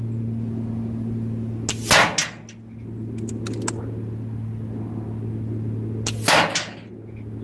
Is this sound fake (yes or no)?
no